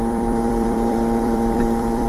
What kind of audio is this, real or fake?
fake